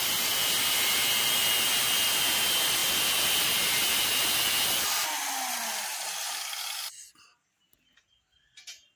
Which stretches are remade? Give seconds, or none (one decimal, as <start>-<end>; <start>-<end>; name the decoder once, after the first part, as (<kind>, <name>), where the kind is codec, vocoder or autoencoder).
none